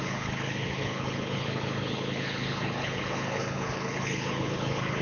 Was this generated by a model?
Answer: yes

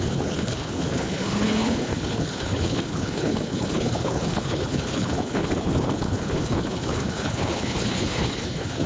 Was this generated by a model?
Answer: yes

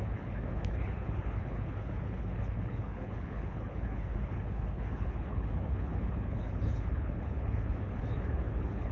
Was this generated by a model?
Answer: yes